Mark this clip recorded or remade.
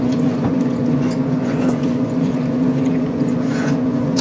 remade